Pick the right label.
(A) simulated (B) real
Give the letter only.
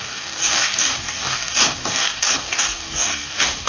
A